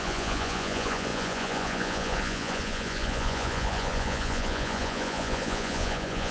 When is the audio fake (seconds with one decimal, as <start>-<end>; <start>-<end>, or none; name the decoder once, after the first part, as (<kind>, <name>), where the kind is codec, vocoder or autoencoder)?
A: 0.0-6.3 (vocoder, Vocos)